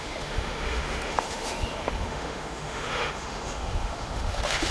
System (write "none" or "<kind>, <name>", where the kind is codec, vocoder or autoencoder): autoencoder, DAC-VAE